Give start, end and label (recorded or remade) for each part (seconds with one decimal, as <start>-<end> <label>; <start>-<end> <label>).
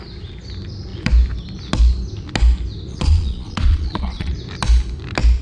0.0-2.9 recorded; 2.9-4.3 remade; 4.3-5.4 recorded